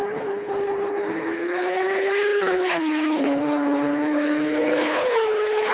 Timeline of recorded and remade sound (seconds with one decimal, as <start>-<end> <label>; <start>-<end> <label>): 0.0-5.7 remade